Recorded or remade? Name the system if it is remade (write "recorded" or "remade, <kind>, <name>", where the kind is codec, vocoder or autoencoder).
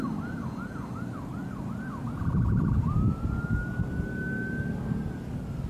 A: recorded